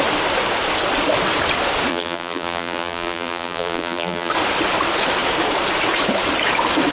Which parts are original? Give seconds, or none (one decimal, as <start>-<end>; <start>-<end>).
0.0-1.9; 4.3-6.9